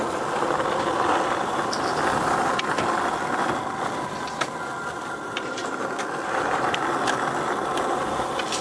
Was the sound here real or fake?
real